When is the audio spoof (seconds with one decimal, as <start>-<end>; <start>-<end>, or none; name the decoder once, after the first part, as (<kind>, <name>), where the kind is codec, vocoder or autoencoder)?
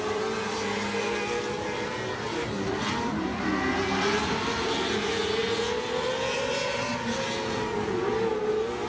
none